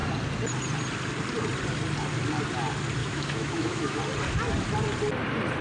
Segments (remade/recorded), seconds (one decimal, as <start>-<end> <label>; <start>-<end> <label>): 0.0-3.0 recorded; 3.0-4.0 remade; 4.0-5.6 recorded